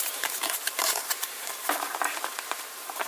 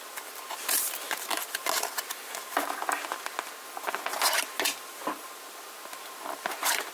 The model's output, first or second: first